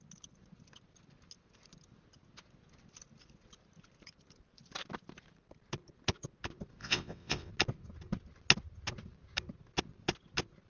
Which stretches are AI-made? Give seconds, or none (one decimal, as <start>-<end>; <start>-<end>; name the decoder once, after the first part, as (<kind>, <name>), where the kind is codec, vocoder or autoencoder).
6.8-7.5 (vocoder, WaveNeXt)